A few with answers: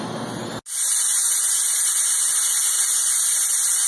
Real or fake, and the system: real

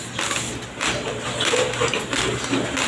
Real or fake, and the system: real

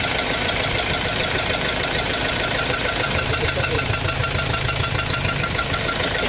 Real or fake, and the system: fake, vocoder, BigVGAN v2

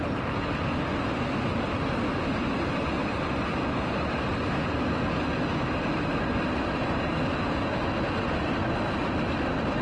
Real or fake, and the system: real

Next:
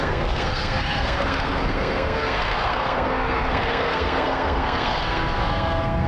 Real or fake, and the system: fake, codec, SNAC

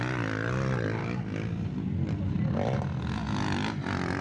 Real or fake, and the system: real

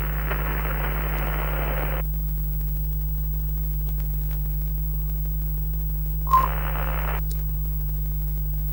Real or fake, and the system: real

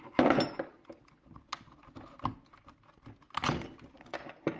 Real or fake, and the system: real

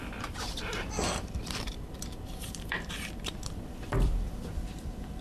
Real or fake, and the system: fake, vocoder, BigVGAN v2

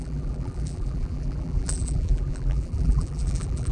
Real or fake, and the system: fake, vocoder, BigVGAN v2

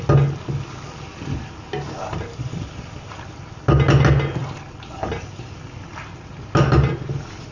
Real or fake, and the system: real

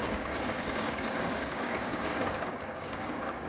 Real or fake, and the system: fake, codec, DAC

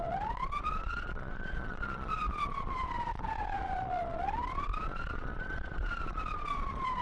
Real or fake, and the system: fake, vocoder, Vocos